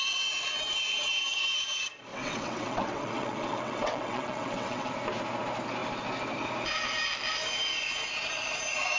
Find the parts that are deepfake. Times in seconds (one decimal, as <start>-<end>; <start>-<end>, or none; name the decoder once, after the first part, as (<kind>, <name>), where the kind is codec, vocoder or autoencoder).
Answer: 2.1-4.9 (vocoder, WaveNeXt)